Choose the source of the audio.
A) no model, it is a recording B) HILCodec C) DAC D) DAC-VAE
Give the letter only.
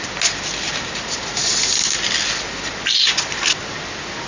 A